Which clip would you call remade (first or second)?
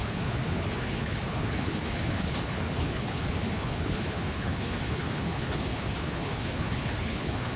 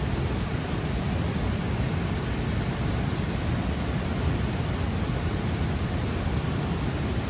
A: first